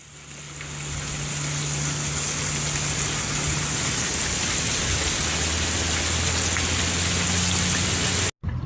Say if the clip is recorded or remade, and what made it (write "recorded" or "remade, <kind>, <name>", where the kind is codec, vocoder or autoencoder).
recorded